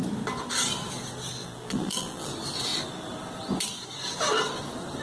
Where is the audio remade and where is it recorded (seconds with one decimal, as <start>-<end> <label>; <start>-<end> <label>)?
0.0-1.4 recorded; 1.4-2.3 remade; 2.3-5.0 recorded

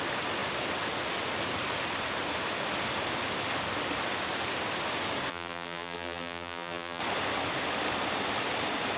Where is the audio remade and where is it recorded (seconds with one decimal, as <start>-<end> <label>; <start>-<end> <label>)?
0.0-5.3 recorded; 5.3-7.0 remade; 7.0-9.0 recorded

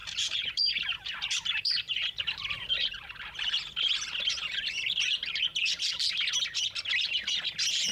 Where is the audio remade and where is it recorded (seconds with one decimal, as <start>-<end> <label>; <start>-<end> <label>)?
0.0-2.7 remade; 2.7-7.9 recorded

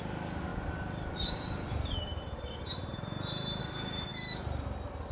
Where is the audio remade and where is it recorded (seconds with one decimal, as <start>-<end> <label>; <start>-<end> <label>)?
0.0-0.5 recorded; 0.5-3.6 remade; 3.6-5.1 recorded